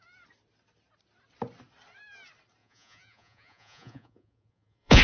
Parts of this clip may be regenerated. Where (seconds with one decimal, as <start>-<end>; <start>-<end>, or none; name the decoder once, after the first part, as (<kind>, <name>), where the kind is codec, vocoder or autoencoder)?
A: 2.6-5.0 (vocoder, Vocos)

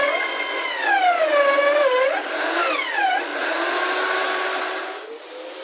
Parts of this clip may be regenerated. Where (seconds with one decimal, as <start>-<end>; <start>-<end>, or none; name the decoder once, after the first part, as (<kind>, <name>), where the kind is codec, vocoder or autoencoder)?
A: 1.8-2.9 (vocoder, BigVGAN v2); 3.3-4.6

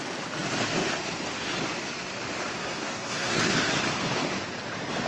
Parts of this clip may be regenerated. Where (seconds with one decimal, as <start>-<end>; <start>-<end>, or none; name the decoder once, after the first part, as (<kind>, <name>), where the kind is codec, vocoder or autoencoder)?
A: 2.6-3.4 (codec, SNAC)

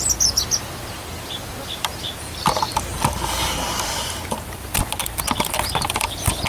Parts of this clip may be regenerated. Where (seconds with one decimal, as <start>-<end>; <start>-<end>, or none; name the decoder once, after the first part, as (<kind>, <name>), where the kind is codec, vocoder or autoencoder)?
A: 1.8-4.7 (vocoder, BigVGAN v2)

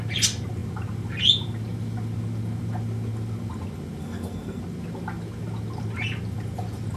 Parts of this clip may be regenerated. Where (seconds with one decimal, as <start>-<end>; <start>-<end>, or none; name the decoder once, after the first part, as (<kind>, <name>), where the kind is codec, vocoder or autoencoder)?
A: 4.0-4.6 (codec, SNAC)